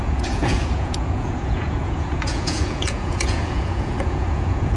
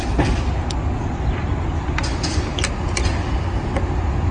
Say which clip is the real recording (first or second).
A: second